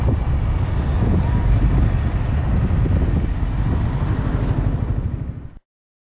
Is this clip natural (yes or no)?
yes